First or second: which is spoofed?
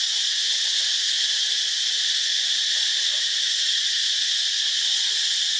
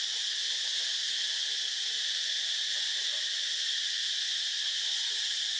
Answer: first